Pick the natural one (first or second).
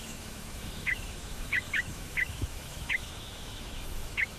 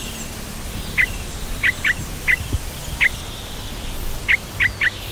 second